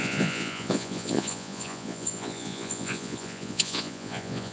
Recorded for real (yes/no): no